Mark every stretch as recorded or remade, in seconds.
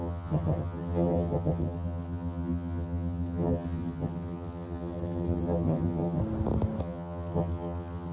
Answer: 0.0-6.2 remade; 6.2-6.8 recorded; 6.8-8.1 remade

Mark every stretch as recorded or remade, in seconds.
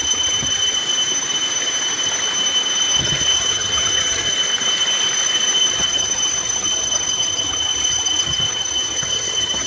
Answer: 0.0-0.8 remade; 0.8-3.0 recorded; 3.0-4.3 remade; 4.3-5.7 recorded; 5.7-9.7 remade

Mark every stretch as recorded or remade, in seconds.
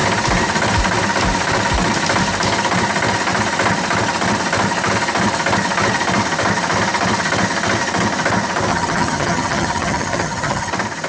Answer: 0.0-8.7 recorded; 8.7-10.7 remade; 10.7-11.1 recorded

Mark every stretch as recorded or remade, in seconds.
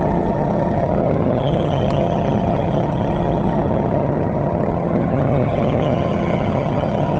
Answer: 0.0-7.2 remade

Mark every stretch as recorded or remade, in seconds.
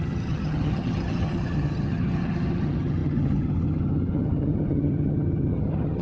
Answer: 0.0-6.0 remade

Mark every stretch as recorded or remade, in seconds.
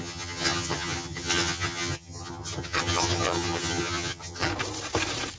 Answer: 0.0-4.5 remade; 4.5-5.4 recorded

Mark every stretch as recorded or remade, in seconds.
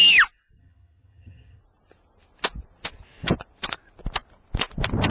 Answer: 0.0-0.6 recorded; 0.6-1.6 remade; 1.6-5.1 recorded